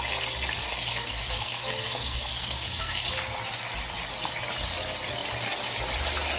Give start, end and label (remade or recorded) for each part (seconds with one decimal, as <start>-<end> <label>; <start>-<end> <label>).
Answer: 0.0-0.9 recorded; 0.9-2.9 remade; 2.9-6.4 recorded